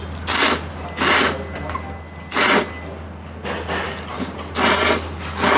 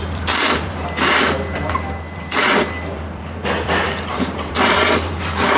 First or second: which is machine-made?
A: second